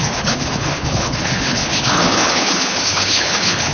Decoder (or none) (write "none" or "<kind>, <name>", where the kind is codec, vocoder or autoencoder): codec, HILCodec